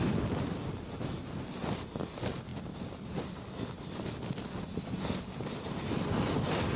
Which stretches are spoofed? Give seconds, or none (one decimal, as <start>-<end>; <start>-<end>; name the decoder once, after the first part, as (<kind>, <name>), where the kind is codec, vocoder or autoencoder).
none